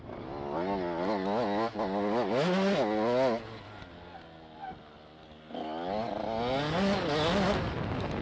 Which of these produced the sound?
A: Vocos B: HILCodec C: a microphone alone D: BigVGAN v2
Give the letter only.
C